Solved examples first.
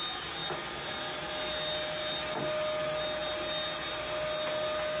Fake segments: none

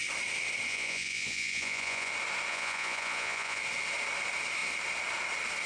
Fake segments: 0.7-2.1 (vocoder, Vocos); 2.5-3.6

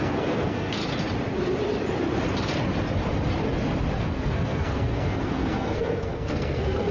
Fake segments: 0.0-0.8 (codec, SNAC); 4.0-6.9

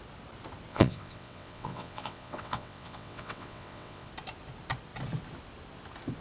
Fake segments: 0.7-4.1 (vocoder, WaveNeXt)

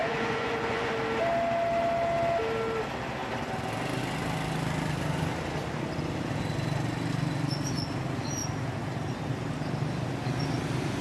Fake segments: 0.0-0.9 (vocoder, Vocos)

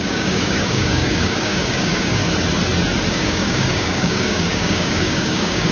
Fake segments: 0.0-2.2 (codec, DAC); 3.1-5.7